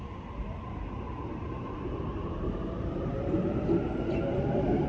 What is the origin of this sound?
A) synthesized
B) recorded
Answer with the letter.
A